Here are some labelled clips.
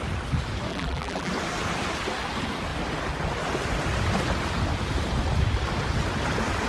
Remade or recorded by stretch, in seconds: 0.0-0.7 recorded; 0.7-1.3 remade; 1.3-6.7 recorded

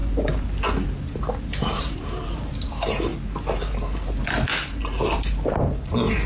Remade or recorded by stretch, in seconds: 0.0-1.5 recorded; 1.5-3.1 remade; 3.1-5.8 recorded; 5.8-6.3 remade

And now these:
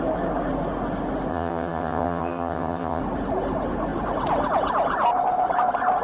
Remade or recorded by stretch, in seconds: 0.0-1.3 recorded; 1.3-3.0 remade; 3.0-6.0 recorded

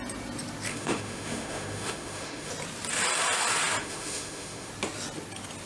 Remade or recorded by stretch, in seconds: 0.0-0.7 recorded; 0.7-2.5 remade; 2.5-3.8 recorded; 3.8-4.7 remade; 4.7-5.7 recorded

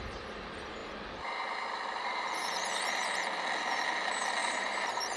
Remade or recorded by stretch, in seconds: 0.0-4.4 recorded; 4.4-5.2 remade

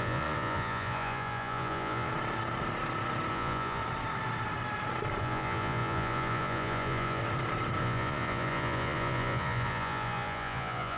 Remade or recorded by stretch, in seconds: 0.0-2.1 remade; 2.1-3.3 recorded; 3.3-3.8 remade; 3.8-5.2 recorded; 5.2-7.2 remade; 7.2-7.8 recorded; 7.8-11.0 remade

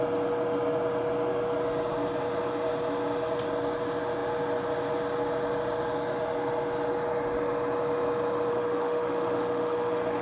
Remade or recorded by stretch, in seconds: 0.0-8.5 recorded; 8.5-10.2 remade